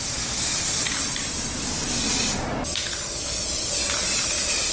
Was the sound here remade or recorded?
recorded